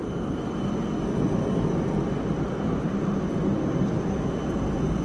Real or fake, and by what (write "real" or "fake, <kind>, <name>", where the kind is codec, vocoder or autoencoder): real